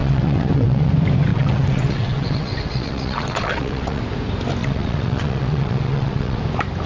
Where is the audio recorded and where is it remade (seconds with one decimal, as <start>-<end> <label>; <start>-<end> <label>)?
0.0-0.9 remade; 0.9-1.3 recorded; 1.3-4.0 remade; 4.0-4.6 recorded; 4.6-6.4 remade; 6.4-6.9 recorded